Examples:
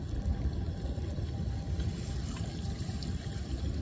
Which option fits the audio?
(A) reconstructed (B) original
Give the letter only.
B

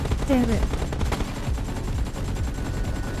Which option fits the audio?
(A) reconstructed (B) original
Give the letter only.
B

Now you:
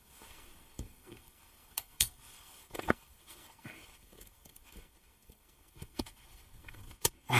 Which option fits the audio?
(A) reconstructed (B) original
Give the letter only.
A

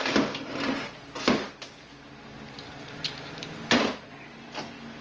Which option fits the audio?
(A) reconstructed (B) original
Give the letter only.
B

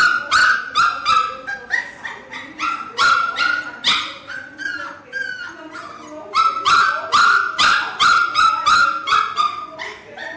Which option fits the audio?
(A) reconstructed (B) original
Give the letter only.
B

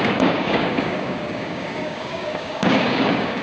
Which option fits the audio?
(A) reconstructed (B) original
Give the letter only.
A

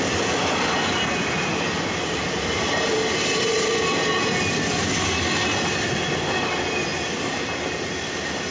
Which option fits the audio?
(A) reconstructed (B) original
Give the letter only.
B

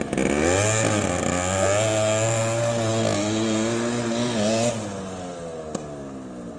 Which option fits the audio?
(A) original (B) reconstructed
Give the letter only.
A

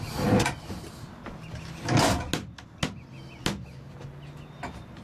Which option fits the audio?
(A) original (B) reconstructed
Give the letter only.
A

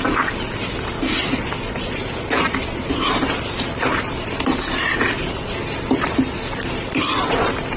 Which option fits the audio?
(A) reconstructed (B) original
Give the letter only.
B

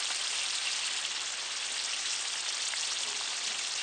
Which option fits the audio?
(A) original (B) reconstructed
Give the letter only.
B